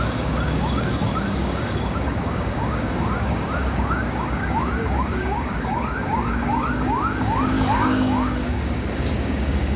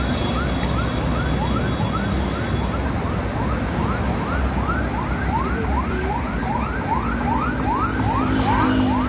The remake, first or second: first